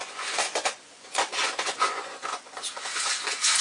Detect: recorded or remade remade